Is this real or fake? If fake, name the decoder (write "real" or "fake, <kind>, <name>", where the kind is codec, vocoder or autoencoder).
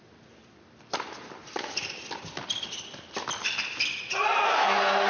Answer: real